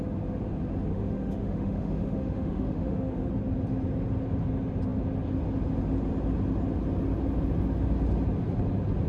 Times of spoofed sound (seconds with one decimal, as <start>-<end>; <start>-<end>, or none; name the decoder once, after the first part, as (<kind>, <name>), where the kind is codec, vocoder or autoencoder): 0.9-3.3 (autoencoder, DAC-VAE)